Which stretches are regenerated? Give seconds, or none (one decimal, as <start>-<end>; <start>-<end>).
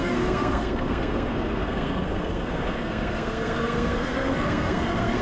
0.0-5.2